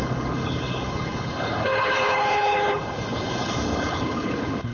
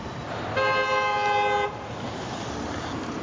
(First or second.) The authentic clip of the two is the second